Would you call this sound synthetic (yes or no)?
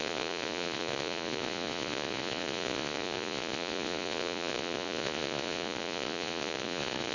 yes